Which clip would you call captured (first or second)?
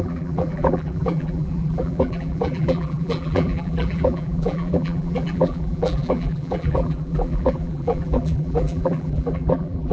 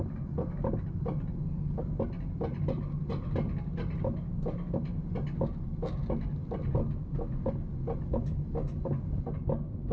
second